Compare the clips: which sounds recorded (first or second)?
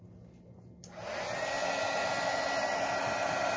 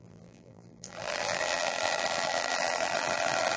first